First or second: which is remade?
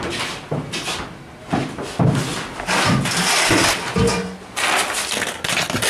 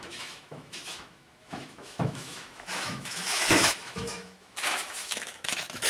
second